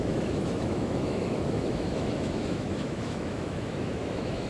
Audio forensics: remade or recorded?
remade